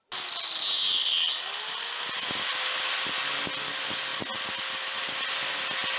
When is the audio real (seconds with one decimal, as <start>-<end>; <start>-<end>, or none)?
0.0-6.0

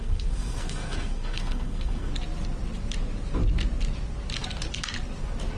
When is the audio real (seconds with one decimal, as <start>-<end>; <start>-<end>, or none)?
2.1-5.6

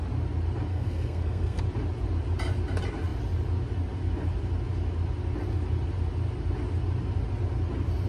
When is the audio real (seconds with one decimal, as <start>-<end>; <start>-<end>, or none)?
0.0-0.7; 1.6-8.1